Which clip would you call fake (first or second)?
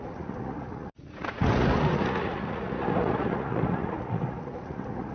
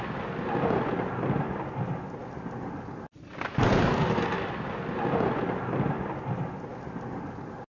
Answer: first